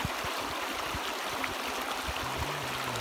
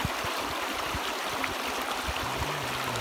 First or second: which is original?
first